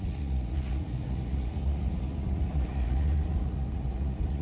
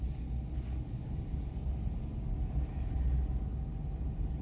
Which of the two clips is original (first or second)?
second